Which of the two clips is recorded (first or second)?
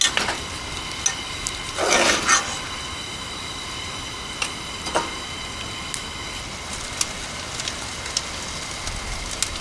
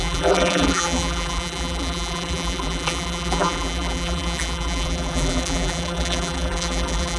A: first